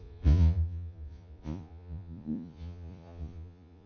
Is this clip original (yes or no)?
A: no